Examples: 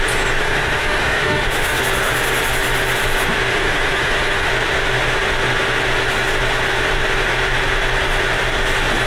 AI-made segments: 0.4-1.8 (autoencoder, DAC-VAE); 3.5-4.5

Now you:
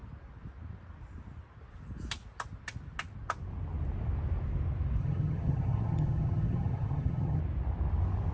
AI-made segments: 5.0-7.4 (vocoder, HiFi-GAN)

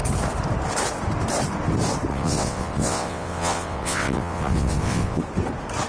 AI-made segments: 2.1-5.2 (vocoder, WaveNeXt)

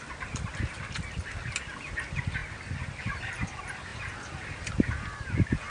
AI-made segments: none